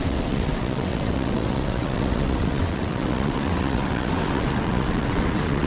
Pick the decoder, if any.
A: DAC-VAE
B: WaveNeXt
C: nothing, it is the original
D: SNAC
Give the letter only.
B